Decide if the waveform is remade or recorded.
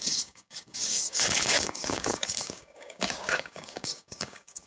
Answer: remade